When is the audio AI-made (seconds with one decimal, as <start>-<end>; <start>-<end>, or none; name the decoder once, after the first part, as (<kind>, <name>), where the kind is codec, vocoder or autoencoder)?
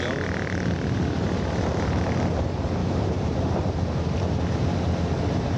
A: 2.8-4.6 (vocoder, BigVGAN v2)